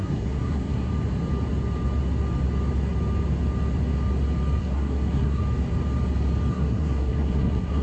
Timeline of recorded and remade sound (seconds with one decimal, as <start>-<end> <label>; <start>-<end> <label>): 0.0-0.9 remade; 0.9-4.6 recorded; 4.6-5.4 remade; 5.4-6.5 recorded; 6.5-7.8 remade